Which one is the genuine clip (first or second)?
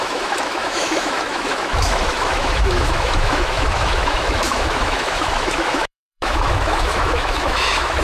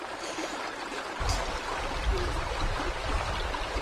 second